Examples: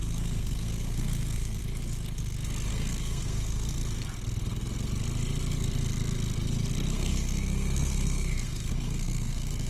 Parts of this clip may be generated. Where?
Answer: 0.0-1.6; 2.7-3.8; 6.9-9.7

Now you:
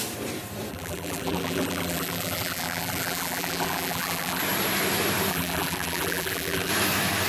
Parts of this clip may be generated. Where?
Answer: 0.7-4.4; 5.3-6.7

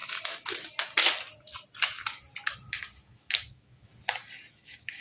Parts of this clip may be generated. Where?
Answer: 3.0-3.9; 4.5-5.0

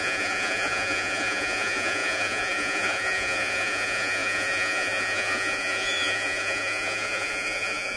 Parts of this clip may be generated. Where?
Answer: 0.0-8.0